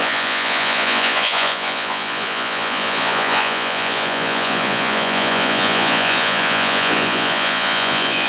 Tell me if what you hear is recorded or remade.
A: remade